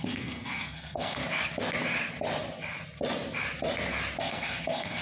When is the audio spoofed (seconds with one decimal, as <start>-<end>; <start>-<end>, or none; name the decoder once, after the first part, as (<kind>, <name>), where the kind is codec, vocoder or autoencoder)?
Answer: 0.0-1.2 (codec, SNAC); 4.2-5.0